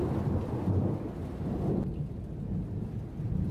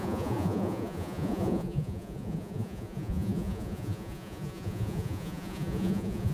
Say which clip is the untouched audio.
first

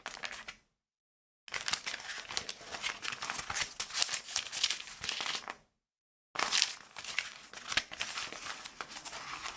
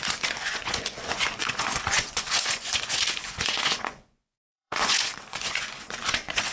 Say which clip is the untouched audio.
first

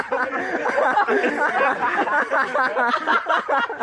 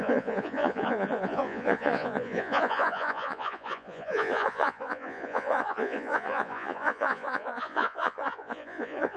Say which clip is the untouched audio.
first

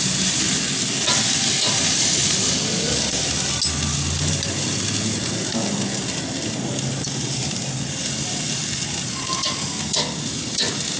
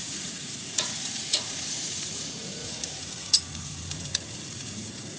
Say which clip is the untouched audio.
first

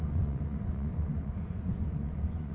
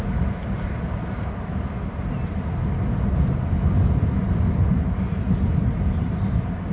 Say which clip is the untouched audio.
second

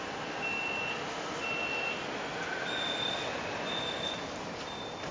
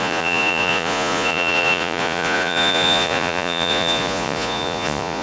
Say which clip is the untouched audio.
first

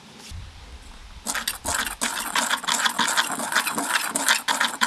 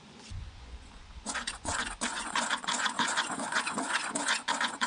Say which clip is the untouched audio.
first